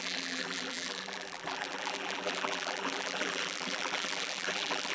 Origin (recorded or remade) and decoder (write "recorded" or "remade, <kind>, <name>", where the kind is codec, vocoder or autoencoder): remade, vocoder, BigVGAN v2